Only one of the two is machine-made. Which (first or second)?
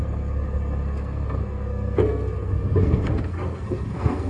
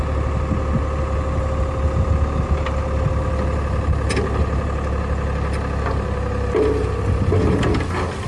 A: first